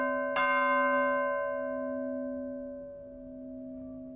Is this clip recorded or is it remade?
recorded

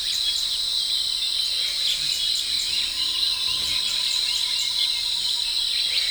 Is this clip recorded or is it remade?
recorded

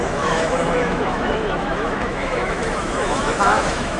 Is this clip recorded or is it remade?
remade